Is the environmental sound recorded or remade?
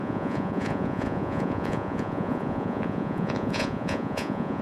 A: remade